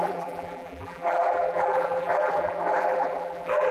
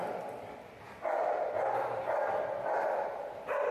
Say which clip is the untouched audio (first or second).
second